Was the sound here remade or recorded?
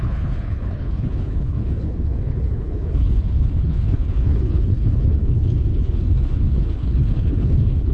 remade